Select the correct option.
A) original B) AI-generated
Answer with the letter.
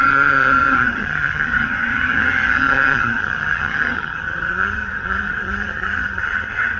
B